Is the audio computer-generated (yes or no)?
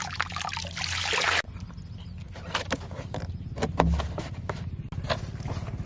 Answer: no